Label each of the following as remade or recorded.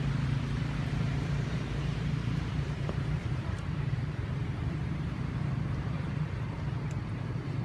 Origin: remade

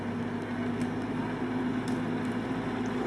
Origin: recorded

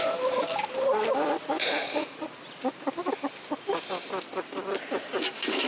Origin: recorded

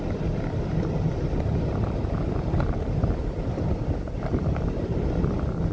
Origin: remade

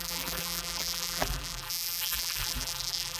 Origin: remade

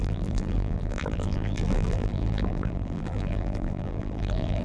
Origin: remade